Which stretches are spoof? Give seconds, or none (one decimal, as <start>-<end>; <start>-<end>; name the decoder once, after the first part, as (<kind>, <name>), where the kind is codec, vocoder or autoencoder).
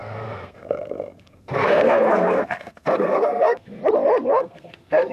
0.0-3.8 (codec, SNAC); 4.4-5.1